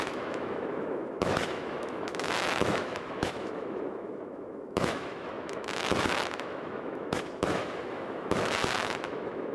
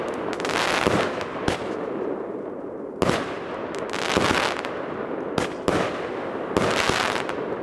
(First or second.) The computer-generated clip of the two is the first